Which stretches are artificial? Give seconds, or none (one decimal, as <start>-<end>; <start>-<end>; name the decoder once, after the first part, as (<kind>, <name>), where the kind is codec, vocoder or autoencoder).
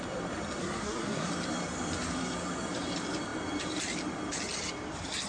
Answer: 0.6-1.3 (codec, SNAC)